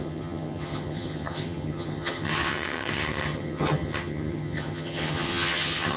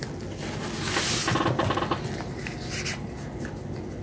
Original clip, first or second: second